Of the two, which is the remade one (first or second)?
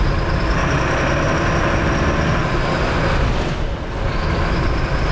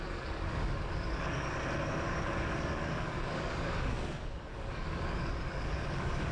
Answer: second